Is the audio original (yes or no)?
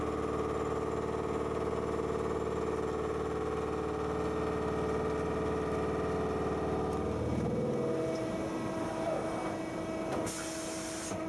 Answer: yes